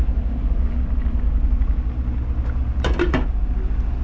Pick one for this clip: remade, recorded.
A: recorded